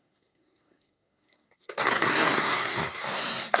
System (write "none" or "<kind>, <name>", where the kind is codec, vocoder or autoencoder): codec, SNAC